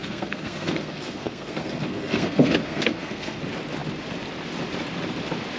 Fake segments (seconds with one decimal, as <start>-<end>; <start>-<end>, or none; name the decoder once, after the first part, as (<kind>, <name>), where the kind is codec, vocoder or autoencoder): 0.0-3.4 (codec, SNAC)